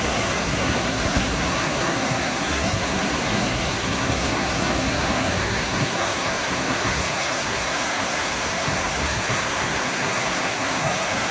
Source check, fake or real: fake